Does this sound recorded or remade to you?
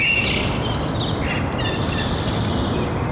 recorded